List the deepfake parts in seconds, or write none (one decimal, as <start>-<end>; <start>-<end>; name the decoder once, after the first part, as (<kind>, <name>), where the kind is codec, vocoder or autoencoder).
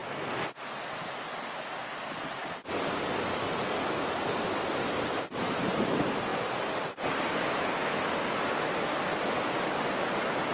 none